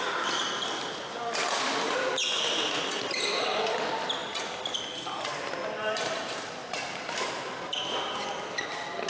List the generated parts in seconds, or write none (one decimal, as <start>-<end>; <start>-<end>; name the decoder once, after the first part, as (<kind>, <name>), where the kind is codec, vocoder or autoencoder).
none